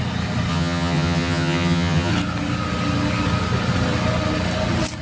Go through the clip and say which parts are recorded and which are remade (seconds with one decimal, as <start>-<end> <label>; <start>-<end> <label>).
0.0-0.5 recorded; 0.5-2.1 remade; 2.1-5.0 recorded